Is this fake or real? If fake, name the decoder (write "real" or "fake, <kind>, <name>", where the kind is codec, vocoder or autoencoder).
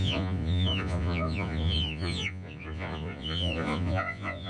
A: fake, vocoder, Vocos